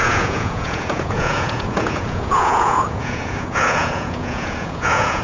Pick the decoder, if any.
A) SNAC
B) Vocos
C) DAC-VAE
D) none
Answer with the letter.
B